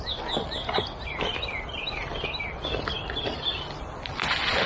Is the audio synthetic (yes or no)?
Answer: no